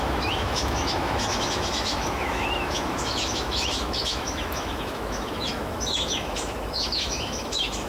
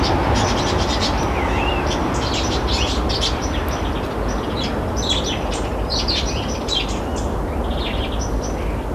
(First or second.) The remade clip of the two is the first